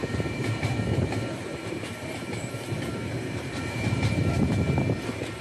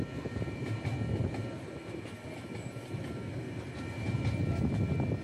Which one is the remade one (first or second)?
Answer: first